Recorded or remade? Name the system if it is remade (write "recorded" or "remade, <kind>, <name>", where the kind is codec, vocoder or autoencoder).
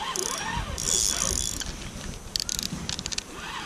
recorded